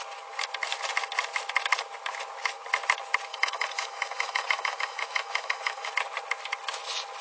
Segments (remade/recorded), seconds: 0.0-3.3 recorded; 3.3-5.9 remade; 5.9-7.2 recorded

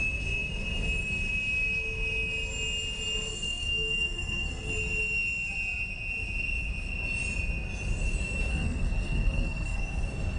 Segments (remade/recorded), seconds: 0.0-3.3 recorded; 3.3-4.7 remade; 4.7-8.5 recorded; 8.5-9.8 remade; 9.8-10.4 recorded

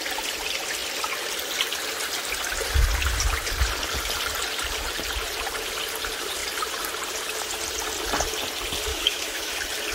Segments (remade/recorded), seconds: 0.0-8.9 recorded; 8.9-9.5 remade; 9.5-9.9 recorded

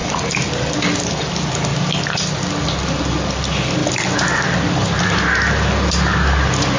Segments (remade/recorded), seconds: 0.0-6.8 recorded

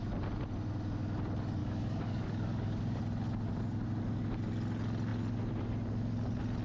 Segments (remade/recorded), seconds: 0.0-1.6 recorded; 1.6-3.0 remade; 3.0-6.6 recorded

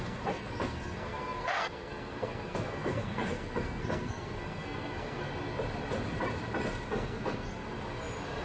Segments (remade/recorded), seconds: 0.0-5.3 remade; 5.3-6.9 recorded; 6.9-7.6 remade; 7.6-8.4 recorded

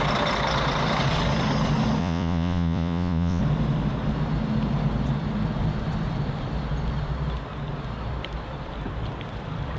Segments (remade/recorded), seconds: 0.0-2.0 recorded; 2.0-3.4 remade; 3.4-9.8 recorded